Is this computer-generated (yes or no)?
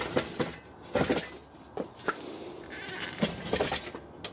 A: no